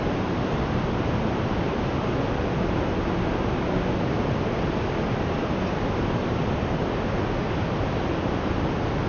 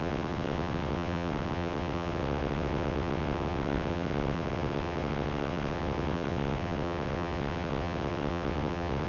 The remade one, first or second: second